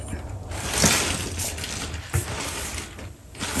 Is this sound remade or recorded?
recorded